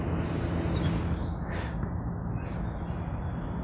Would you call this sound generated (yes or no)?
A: no